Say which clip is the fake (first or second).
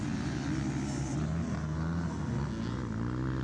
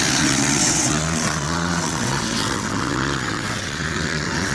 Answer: second